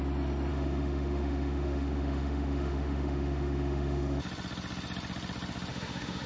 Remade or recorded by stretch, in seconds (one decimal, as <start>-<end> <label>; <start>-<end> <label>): 0.0-0.5 recorded; 0.5-4.2 remade; 4.2-5.7 recorded; 5.7-6.3 remade